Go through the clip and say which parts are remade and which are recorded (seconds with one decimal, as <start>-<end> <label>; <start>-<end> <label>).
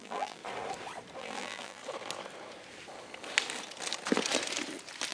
0.0-0.4 remade; 0.4-1.2 recorded; 1.2-1.8 remade; 1.8-5.1 recorded